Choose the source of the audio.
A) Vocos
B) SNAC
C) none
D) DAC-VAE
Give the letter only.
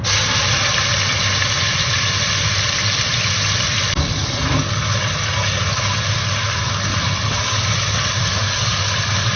C